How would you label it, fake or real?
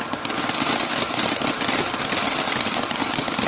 real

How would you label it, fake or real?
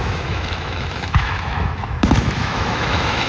fake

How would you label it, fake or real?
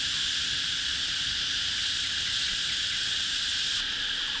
real